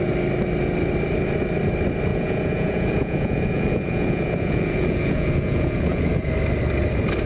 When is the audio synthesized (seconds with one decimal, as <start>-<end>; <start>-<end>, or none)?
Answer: 2.1-6.3

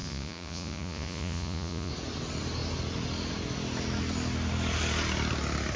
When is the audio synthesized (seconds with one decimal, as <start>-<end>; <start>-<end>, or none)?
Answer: 0.0-1.9

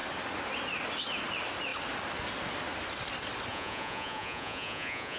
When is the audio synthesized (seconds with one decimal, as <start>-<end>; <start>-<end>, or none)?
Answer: 3.5-5.2

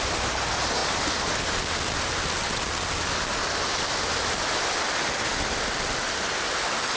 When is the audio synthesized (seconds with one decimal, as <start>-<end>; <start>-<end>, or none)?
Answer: none

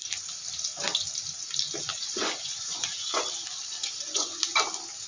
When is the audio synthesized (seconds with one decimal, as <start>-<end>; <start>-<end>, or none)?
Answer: 1.9-3.2; 3.8-4.4

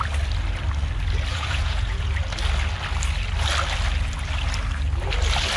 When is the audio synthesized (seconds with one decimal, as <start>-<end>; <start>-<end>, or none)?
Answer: 1.3-2.1